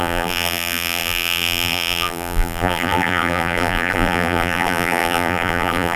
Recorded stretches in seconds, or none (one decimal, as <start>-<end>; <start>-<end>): none